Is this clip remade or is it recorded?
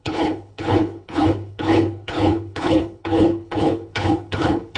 remade